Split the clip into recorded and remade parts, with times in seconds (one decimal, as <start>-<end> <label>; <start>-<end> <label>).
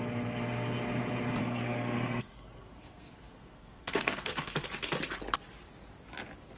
0.0-1.4 recorded; 1.4-4.6 remade; 4.6-6.6 recorded